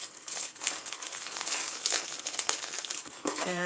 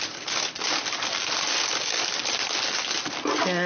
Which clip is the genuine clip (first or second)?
second